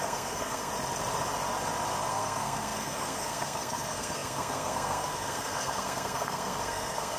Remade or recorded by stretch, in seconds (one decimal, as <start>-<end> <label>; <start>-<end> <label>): 0.0-0.7 remade; 0.7-2.1 recorded; 2.1-7.2 remade